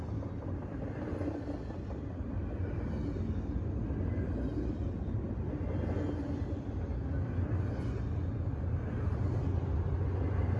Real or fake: real